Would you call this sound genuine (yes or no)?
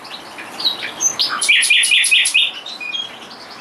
yes